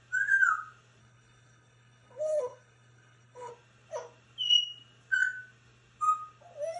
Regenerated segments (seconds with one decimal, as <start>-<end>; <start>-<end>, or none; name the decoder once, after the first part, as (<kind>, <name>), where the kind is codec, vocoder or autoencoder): 1.0-3.5 (codec, HILCodec)